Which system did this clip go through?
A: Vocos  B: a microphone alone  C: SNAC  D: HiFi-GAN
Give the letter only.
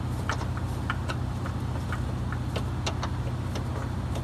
B